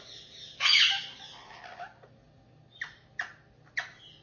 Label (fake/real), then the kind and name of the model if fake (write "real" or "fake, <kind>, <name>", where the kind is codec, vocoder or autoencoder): real